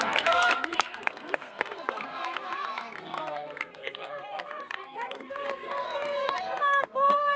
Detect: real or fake fake